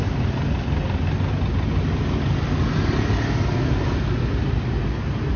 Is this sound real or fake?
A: real